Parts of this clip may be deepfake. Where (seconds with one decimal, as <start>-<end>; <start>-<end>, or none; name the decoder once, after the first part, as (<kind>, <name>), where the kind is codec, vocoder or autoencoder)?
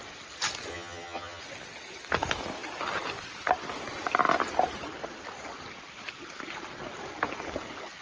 0.7-1.4 (vocoder, HiFi-GAN)